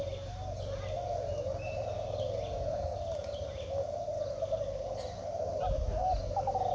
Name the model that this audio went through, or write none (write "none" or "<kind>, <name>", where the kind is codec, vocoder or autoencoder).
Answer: none